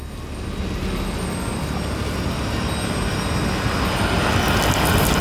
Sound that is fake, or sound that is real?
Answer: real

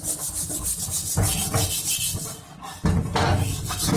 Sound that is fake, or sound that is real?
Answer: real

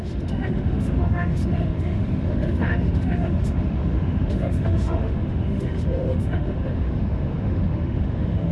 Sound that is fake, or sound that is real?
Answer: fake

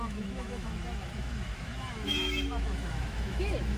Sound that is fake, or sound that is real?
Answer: fake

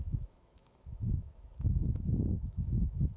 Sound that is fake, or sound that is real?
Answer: fake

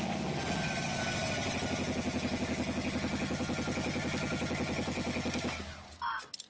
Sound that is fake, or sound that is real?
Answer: real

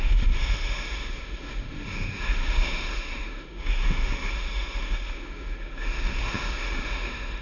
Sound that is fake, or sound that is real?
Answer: fake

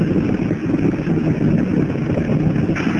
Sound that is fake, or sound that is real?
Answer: real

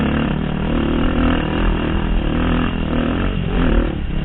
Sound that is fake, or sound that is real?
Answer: real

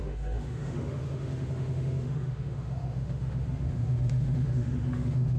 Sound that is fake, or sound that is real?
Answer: fake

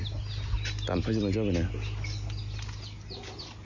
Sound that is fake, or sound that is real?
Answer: real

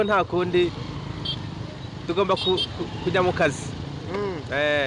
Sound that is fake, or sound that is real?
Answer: real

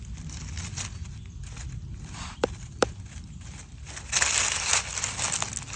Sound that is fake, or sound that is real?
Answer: real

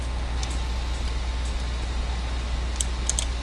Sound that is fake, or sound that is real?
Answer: real